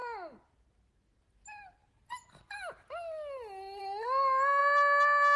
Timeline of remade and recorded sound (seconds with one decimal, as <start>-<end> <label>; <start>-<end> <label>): 0.0-5.4 recorded